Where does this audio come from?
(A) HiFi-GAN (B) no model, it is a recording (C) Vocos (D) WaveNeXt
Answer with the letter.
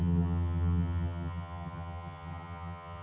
A